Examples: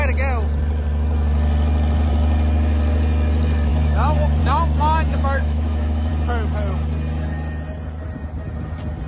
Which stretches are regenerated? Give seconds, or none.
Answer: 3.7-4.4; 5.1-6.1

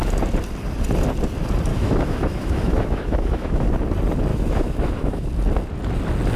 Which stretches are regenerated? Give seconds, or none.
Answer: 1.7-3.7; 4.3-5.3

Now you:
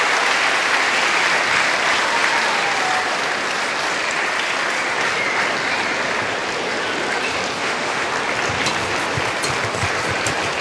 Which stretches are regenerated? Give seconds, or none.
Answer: 7.6-8.1